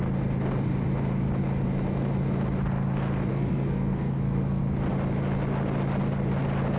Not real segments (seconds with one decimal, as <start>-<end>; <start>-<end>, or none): 3.3-4.6